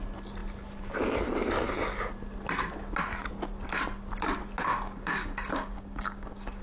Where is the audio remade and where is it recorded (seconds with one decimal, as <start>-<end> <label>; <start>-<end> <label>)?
0.0-4.7 recorded; 4.7-6.6 remade